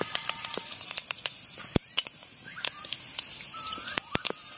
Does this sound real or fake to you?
fake